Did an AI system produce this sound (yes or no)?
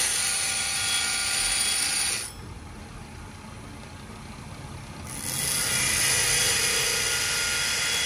no